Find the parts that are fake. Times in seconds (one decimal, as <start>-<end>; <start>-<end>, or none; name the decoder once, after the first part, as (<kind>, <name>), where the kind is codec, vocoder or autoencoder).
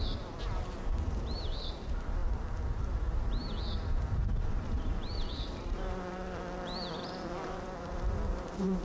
0.0-6.2 (vocoder, BigVGAN v2); 7.5-8.8